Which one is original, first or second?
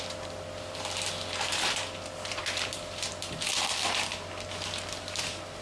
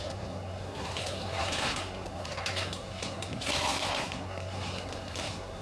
first